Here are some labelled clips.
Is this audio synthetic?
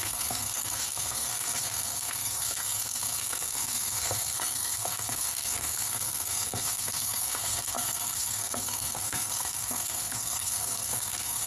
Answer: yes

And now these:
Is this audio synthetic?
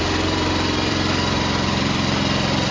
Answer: yes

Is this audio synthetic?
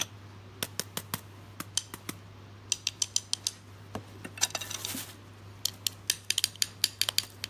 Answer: no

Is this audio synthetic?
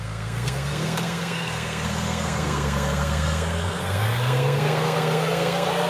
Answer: yes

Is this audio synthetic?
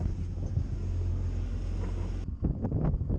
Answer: no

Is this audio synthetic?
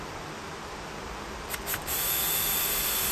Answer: yes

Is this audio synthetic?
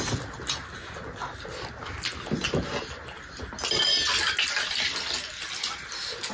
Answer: no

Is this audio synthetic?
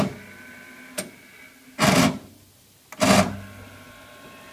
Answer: no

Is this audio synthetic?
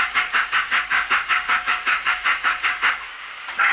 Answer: yes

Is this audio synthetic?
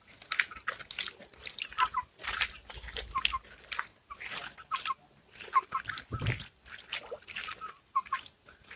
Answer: no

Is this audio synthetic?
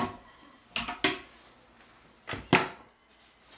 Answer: no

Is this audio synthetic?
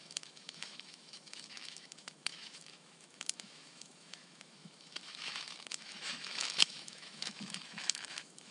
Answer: yes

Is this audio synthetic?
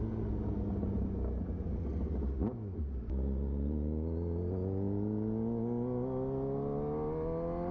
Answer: no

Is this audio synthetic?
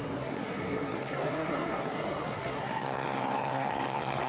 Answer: yes